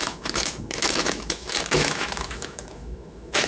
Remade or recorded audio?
remade